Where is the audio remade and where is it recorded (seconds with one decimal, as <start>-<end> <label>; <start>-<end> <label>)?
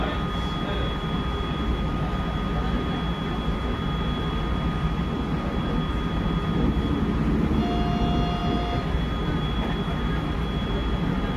0.0-11.4 recorded